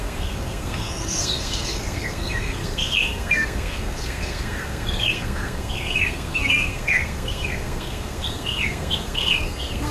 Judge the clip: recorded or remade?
remade